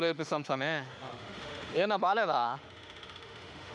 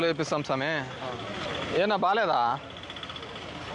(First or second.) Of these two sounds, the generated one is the first